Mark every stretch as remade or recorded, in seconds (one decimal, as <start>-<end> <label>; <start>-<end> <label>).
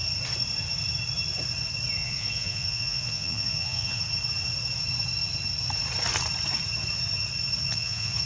0.0-2.0 recorded; 2.0-4.0 remade; 4.0-7.7 recorded; 7.7-8.3 remade